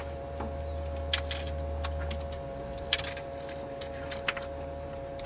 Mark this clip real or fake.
real